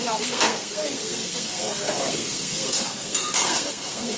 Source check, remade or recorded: remade